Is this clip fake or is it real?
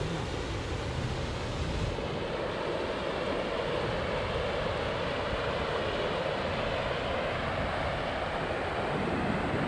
real